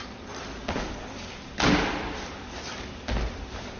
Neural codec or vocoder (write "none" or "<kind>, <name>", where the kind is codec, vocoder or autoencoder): none